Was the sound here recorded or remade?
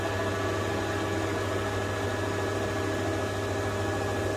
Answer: recorded